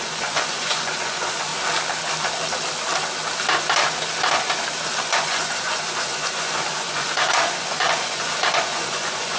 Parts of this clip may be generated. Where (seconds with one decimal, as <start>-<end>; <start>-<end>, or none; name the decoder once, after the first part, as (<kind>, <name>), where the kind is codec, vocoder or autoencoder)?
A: 0.0-1.5 (vocoder, Vocos); 5.0-9.4